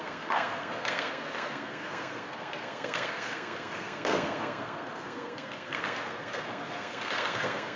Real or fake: fake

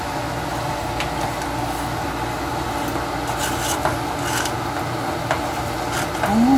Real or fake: real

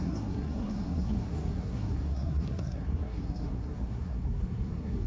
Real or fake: fake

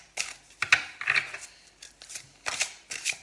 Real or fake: real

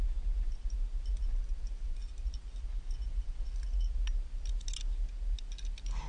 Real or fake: real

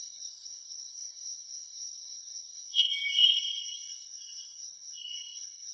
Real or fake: fake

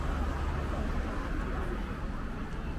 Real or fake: real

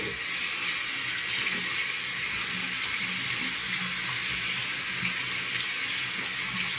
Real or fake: real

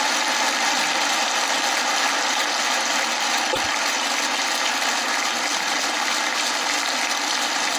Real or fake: real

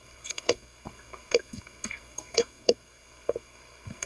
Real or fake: fake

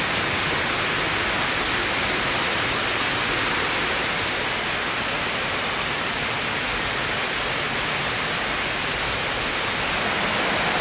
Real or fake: real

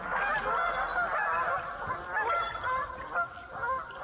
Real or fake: real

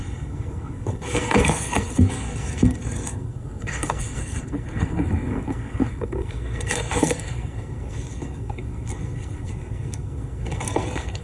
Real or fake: fake